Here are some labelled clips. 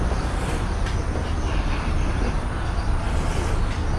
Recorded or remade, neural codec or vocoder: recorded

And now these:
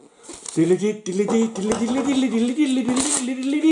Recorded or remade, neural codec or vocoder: recorded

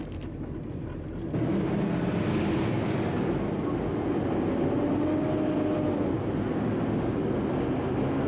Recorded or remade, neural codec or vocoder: recorded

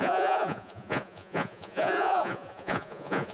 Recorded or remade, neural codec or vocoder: remade, vocoder, Vocos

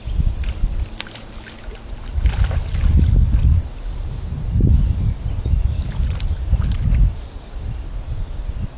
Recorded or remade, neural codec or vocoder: recorded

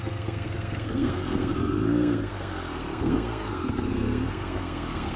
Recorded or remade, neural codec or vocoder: remade, codec, SNAC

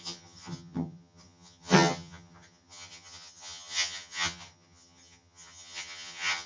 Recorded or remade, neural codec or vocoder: remade, vocoder, HiFi-GAN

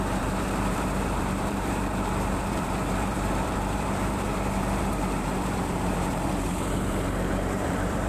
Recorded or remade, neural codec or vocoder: remade, vocoder, BigVGAN v2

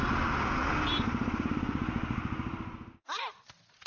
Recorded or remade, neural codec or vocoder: recorded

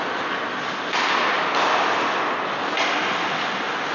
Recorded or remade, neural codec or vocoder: recorded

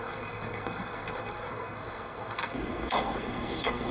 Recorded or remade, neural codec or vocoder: remade, codec, SNAC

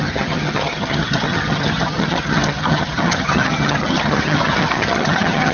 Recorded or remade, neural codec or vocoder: remade, vocoder, HiFi-GAN